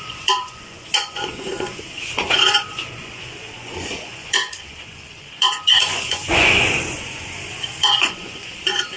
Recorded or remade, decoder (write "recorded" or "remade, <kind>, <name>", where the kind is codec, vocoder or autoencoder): remade, vocoder, Vocos